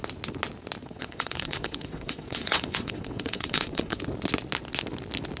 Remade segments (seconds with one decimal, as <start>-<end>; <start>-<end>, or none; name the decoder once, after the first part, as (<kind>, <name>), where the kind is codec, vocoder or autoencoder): 0.8-4.0 (vocoder, WaveNeXt)